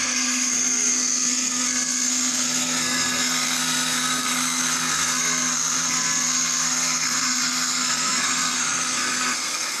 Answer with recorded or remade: remade